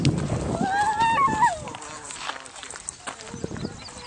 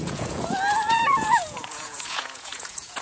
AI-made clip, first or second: second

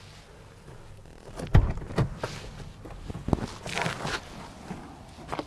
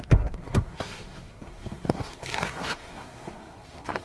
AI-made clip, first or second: second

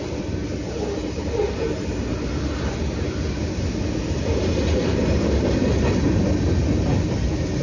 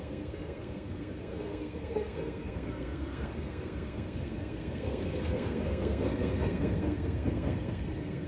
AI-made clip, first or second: second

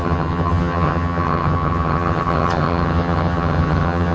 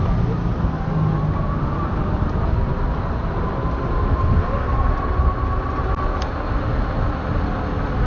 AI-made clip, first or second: first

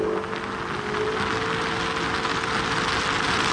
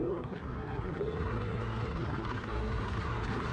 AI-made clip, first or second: second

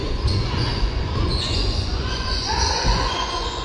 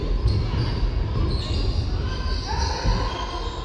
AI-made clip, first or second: first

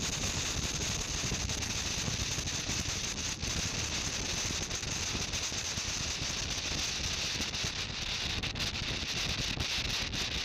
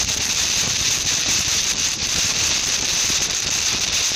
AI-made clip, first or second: second